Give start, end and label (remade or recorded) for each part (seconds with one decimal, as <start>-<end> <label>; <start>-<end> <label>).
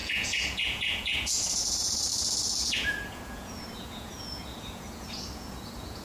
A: 0.0-2.1 remade; 2.1-2.6 recorded; 2.6-6.0 remade